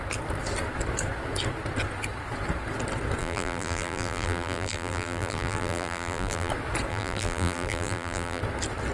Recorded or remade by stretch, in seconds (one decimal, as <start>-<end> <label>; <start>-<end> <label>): 0.0-3.2 recorded; 3.2-6.5 remade; 6.5-6.9 recorded; 6.9-8.4 remade; 8.4-8.9 recorded